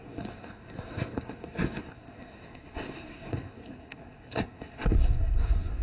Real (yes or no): no